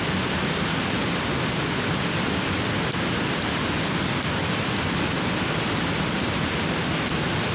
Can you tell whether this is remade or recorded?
recorded